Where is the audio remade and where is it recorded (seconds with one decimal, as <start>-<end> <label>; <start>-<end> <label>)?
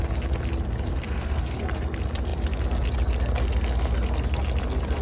0.0-0.9 recorded; 0.9-1.6 remade; 1.6-5.0 recorded